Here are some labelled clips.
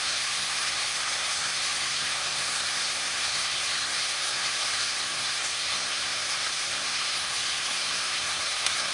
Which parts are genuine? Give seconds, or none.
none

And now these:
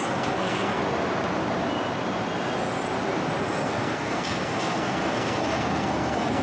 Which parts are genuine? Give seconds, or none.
0.8-3.4